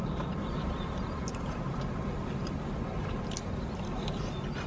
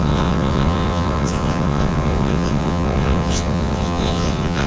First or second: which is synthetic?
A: second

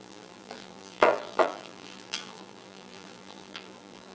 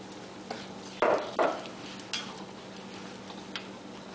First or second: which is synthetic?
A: first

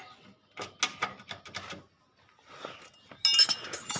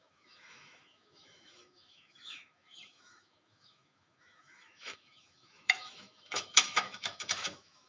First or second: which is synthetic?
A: second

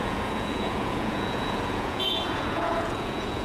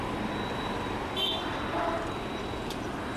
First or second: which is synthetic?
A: first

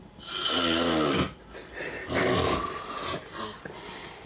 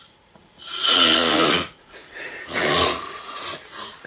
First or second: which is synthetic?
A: second